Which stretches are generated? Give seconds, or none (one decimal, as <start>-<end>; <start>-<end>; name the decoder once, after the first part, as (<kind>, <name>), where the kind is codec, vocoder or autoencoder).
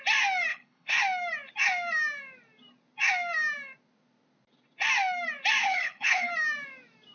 0.5-1.0 (codec, HILCodec); 5.6-6.3